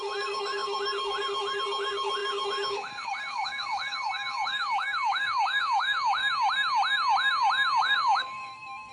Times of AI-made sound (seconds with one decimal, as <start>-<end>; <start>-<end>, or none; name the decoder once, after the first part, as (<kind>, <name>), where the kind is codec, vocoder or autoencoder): 0.0-6.2 (codec, DAC); 7.8-8.9